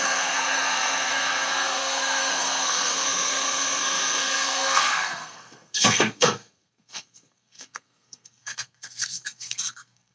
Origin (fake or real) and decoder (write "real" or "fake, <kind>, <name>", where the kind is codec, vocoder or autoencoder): fake, codec, SNAC